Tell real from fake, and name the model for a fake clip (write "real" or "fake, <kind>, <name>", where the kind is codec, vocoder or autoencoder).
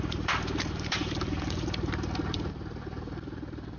fake, vocoder, BigVGAN v2